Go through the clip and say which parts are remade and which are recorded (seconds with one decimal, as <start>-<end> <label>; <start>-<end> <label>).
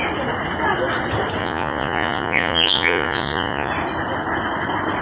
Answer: 0.0-1.4 recorded; 1.4-3.7 remade; 3.7-5.0 recorded